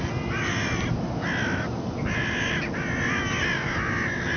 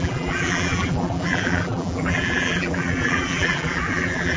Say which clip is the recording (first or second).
first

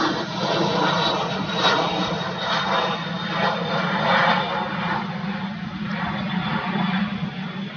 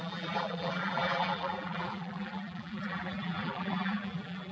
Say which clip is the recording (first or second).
first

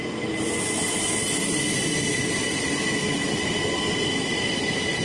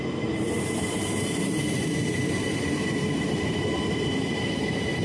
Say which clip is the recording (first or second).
first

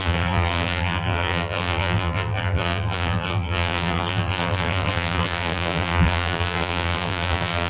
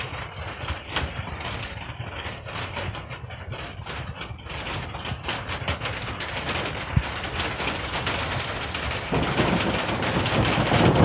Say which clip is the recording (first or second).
second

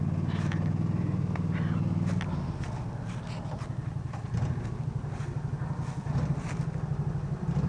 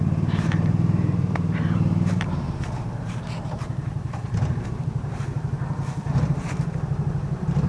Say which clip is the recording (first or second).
first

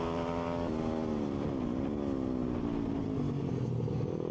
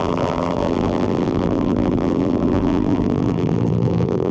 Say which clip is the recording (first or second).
first